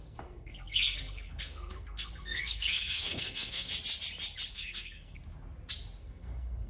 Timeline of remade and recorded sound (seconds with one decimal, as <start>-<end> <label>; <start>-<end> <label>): 0.0-3.7 remade; 3.7-4.5 recorded; 4.5-5.2 remade; 5.2-6.0 recorded; 6.0-6.7 remade